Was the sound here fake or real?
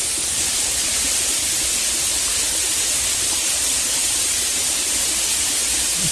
real